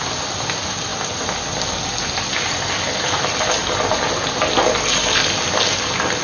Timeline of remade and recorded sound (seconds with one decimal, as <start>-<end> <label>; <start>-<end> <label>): 0.0-6.2 recorded